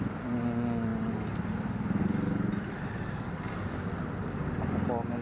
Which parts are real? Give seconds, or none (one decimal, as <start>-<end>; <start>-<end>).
0.0-5.2